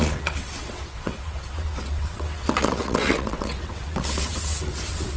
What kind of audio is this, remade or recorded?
remade